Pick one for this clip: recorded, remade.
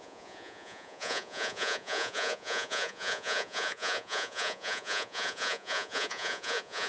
remade